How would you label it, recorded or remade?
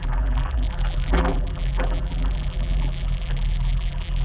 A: remade